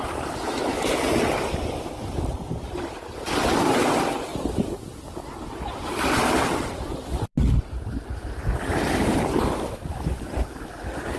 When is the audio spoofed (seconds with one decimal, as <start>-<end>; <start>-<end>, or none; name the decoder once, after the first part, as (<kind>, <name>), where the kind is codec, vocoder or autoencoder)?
none